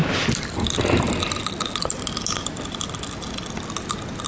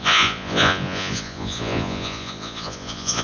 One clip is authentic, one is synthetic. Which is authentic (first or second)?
first